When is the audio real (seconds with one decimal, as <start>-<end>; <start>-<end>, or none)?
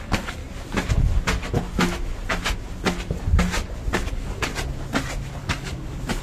0.4-4.1; 4.5-5.4